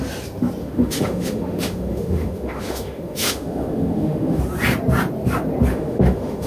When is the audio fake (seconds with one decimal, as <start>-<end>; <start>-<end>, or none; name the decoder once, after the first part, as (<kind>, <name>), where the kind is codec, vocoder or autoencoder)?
0.6-4.4 (autoencoder, DAC-VAE); 5.7-6.5